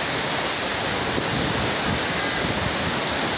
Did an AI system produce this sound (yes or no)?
no